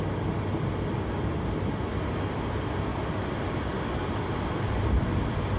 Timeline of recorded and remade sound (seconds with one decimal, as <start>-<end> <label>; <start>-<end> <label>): 0.0-5.6 recorded